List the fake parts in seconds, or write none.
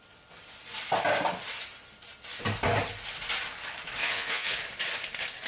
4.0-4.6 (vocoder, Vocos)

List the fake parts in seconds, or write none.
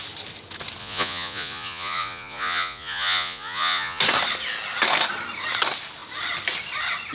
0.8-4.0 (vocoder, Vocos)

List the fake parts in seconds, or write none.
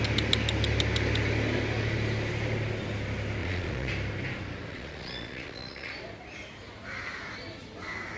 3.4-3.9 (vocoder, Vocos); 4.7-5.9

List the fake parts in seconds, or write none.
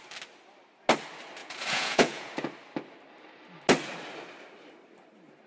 1.4-2.3 (vocoder, Vocos)